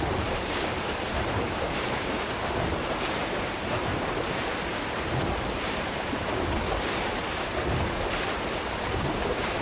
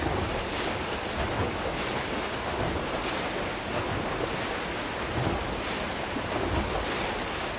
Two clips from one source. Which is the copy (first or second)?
first